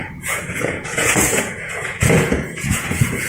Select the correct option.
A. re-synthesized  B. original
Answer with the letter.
A